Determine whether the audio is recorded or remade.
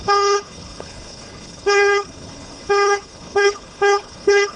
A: remade